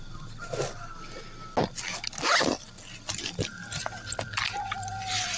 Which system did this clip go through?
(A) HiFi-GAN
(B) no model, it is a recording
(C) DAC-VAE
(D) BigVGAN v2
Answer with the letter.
B